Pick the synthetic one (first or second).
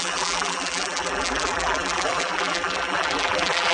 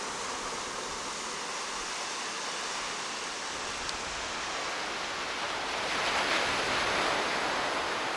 first